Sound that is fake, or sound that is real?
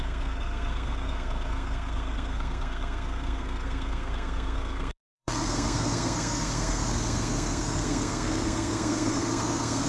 fake